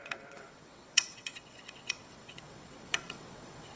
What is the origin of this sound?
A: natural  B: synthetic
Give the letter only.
B